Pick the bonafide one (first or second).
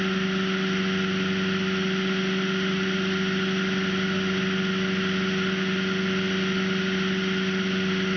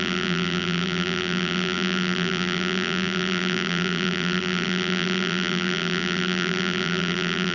first